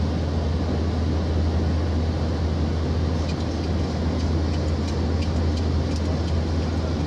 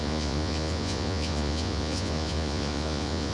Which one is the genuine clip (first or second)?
first